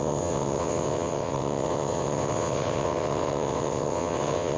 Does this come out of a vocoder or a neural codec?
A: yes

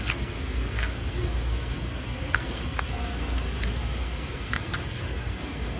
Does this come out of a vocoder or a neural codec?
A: yes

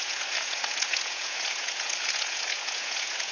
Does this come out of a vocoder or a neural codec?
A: yes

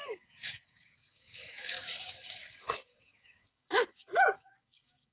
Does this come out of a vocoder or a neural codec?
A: yes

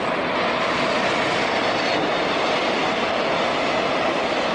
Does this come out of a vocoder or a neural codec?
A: no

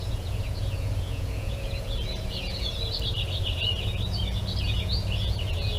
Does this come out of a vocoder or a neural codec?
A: yes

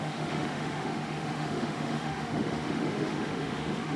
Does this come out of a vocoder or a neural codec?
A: yes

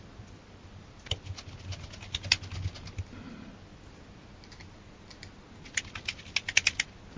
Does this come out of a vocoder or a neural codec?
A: no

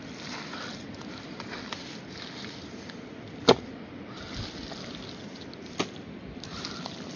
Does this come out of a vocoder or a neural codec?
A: no